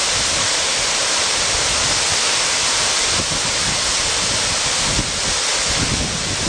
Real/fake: real